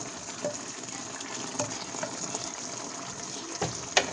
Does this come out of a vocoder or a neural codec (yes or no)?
no